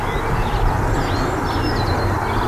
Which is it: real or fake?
real